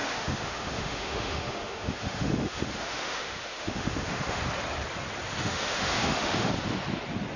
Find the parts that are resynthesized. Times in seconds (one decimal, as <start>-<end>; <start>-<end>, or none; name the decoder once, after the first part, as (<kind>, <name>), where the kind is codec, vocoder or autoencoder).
0.0-4.4 (autoencoder, DAC-VAE); 5.4-6.5

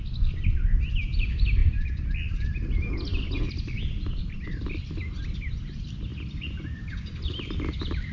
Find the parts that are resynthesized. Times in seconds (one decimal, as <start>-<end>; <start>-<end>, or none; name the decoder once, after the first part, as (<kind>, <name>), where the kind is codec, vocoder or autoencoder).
none

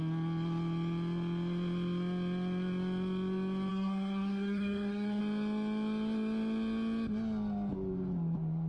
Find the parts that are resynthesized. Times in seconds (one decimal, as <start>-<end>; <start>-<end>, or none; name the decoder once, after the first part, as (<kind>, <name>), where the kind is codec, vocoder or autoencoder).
3.7-5.2 (codec, SNAC)